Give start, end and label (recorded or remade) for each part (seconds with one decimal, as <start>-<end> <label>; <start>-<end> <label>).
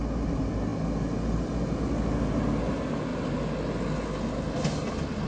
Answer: 0.0-5.3 recorded